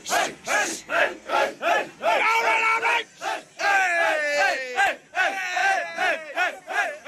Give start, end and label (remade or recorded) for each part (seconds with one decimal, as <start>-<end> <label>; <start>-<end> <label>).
0.0-0.7 recorded; 0.7-1.6 remade; 1.6-7.1 recorded